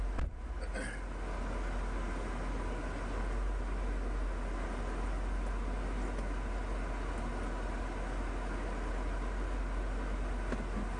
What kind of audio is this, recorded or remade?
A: recorded